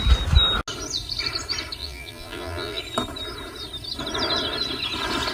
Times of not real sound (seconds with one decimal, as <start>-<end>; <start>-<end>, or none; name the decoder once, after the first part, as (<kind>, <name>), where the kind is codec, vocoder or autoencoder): 1.8-2.8 (vocoder, BigVGAN v2)